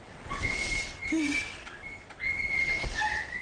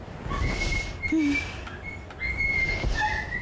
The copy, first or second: first